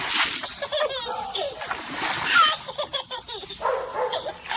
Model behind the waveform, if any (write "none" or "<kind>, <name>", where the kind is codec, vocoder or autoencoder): none